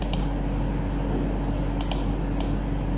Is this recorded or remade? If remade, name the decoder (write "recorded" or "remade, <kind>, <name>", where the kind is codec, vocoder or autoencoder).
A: recorded